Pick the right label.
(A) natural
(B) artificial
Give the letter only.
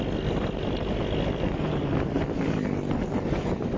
A